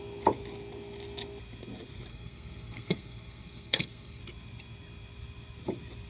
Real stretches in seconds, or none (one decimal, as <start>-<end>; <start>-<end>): 0.0-2.1; 4.2-6.1